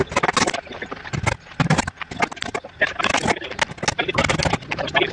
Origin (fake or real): real